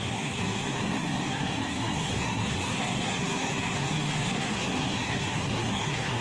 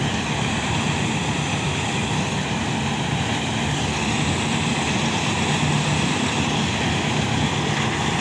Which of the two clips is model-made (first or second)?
first